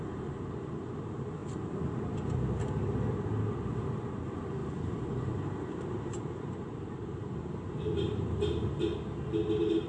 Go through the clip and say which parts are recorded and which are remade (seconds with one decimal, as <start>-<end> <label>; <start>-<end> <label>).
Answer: 0.0-4.6 recorded; 4.6-8.8 remade; 8.8-9.9 recorded